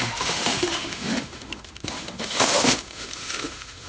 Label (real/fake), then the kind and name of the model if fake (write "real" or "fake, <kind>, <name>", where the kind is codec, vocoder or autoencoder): fake, autoencoder, DAC-VAE